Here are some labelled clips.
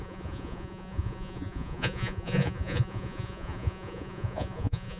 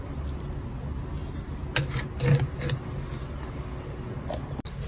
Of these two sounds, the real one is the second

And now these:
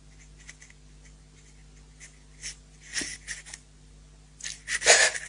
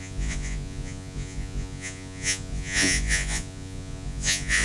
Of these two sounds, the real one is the first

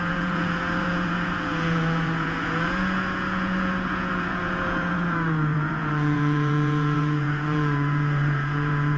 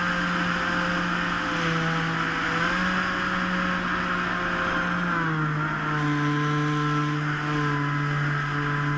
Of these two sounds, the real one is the second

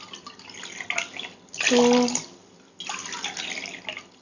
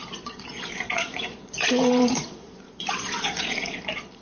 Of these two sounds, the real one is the first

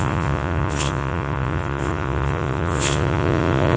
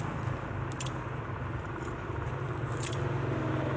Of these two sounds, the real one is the second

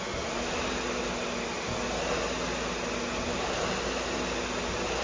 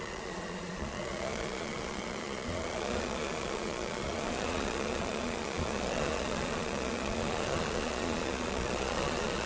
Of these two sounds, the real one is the first